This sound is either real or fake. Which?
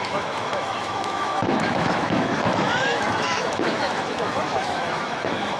fake